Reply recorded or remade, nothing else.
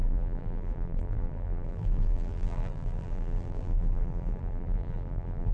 remade